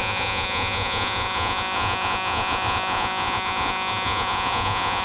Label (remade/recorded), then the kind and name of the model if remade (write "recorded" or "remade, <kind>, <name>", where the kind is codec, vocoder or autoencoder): remade, vocoder, Vocos